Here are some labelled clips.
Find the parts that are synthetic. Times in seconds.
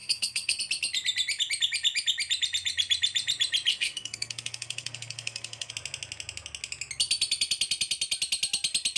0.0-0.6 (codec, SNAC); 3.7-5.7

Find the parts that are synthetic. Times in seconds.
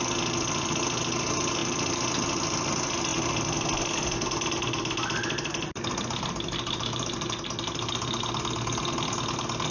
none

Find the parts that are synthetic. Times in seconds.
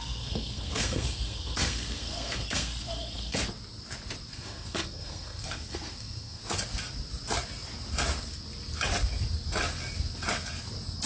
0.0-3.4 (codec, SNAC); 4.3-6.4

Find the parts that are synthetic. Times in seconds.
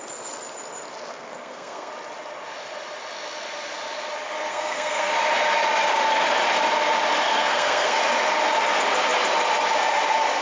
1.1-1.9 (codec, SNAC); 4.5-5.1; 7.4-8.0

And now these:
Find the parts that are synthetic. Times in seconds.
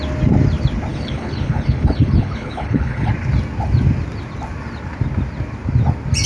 0.9-3.1 (codec, HILCodec)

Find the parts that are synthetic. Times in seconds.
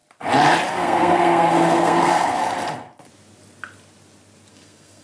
0.7-2.4 (codec, SNAC); 4.5-5.0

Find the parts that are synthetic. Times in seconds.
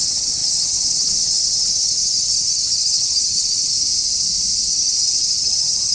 0.0-3.9 (vocoder, HiFi-GAN); 4.7-5.9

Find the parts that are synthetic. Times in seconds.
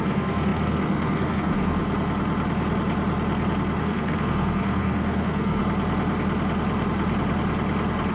0.0-1.8 (codec, SNAC); 3.8-5.6